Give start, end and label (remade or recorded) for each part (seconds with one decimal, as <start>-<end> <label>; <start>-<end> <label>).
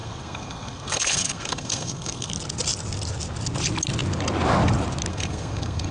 0.0-2.3 remade; 2.3-5.1 recorded; 5.1-5.9 remade